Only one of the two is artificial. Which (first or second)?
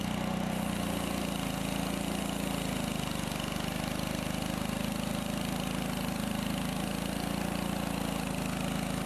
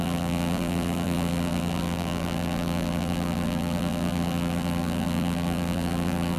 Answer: second